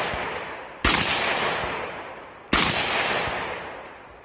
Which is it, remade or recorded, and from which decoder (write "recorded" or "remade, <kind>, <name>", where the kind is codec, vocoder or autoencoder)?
recorded